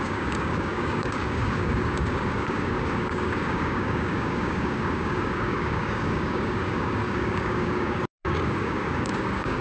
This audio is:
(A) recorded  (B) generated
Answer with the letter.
B